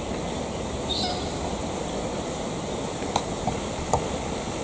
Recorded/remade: recorded